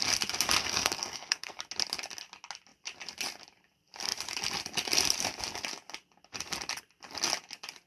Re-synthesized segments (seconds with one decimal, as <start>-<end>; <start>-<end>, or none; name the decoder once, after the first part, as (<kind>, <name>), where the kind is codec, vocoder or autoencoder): 0.6-1.6 (codec, SNAC)